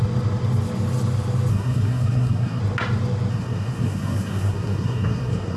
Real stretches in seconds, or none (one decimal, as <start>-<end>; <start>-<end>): 0.0-1.5; 2.6-3.3